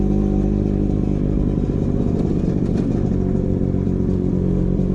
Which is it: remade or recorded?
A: recorded